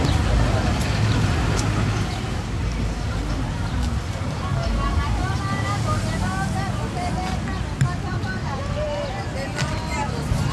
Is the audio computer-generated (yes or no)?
no